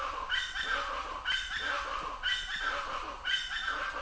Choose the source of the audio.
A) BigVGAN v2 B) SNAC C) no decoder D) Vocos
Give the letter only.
C